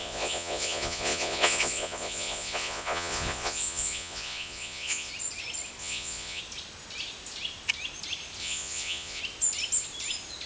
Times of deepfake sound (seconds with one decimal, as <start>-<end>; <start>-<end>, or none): 0.0-5.1; 5.8-6.4; 8.4-9.2